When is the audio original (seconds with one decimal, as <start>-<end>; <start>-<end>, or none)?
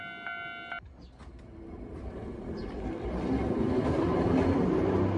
0.0-1.9; 4.5-5.2